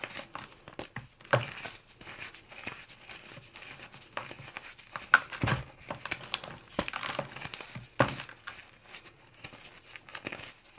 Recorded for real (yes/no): yes